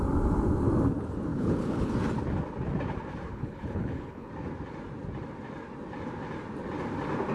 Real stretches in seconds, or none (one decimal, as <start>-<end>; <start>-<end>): 0.0-1.3; 1.9-3.3; 4.3-7.3